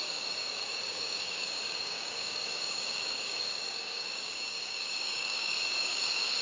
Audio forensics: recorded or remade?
remade